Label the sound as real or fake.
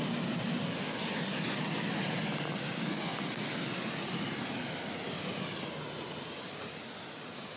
real